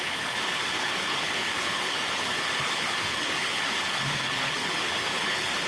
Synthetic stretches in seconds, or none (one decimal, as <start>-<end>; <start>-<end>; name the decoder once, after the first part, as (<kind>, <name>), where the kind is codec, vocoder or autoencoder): 0.0-5.7 (codec, HILCodec)